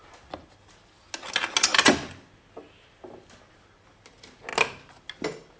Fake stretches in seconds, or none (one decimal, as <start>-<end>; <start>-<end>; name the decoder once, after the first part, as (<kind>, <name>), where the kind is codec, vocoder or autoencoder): none